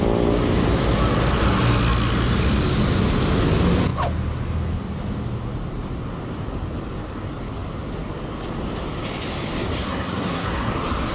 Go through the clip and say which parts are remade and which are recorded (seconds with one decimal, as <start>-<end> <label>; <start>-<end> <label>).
0.0-9.8 recorded; 9.8-10.7 remade; 10.7-11.1 recorded